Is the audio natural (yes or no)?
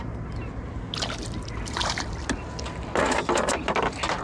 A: yes